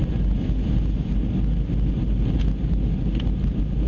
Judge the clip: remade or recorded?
recorded